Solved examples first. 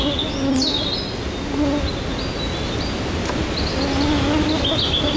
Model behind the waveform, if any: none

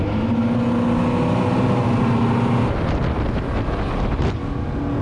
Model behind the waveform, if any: none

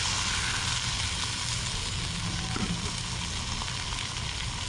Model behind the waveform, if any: none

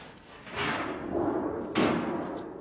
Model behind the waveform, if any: none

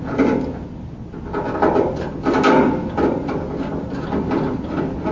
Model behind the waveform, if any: none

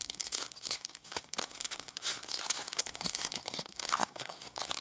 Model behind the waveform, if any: codec, SNAC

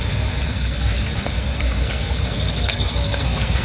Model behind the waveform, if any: codec, SNAC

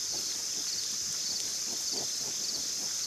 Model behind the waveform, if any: none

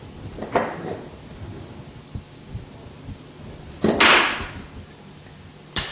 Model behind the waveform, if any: none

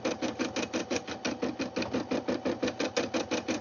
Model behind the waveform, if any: none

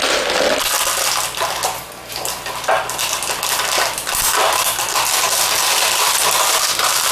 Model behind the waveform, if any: none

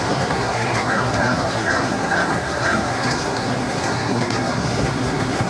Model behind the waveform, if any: codec, SNAC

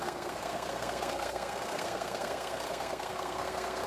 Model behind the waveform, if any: codec, SNAC